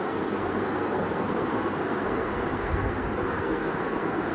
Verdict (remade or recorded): remade